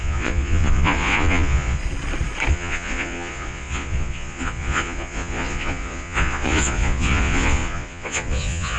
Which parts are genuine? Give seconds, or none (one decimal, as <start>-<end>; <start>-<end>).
1.8-2.5